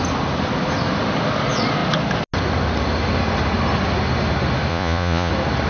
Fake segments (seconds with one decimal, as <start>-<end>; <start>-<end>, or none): 4.7-5.3